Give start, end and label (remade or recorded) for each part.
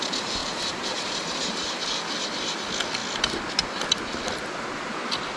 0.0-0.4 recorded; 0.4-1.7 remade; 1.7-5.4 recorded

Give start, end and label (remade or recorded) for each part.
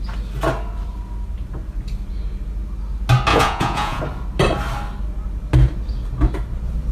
0.0-3.3 recorded; 3.3-4.0 remade; 4.0-6.9 recorded